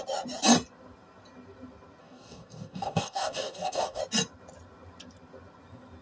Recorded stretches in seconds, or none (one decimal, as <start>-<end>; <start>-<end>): 0.0-2.0; 4.0-6.0